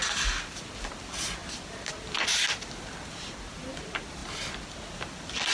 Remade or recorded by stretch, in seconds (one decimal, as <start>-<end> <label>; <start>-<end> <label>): 0.0-1.4 recorded; 1.4-1.9 remade; 1.9-5.5 recorded